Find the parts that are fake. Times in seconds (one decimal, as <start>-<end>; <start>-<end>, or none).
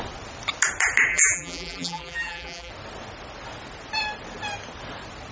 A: 1.1-2.7